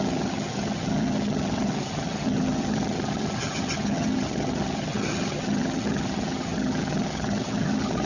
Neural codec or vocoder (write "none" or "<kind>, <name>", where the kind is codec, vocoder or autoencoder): vocoder, HiFi-GAN